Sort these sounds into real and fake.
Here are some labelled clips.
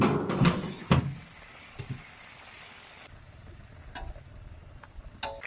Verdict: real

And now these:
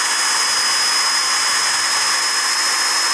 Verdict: real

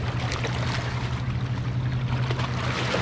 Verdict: real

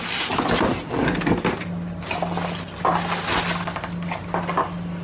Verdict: real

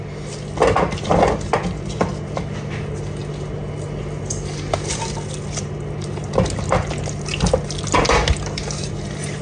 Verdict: real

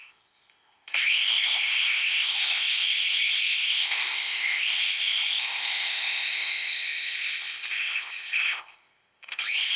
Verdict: fake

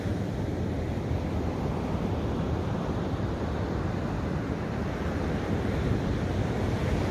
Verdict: real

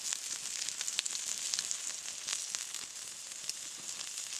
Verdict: real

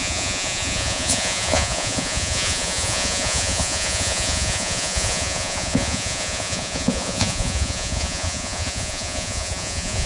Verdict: fake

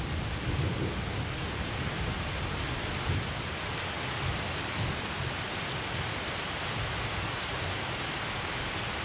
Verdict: real